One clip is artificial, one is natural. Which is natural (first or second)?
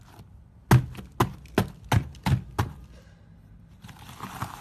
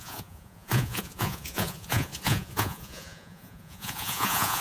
first